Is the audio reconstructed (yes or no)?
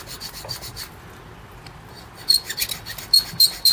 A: no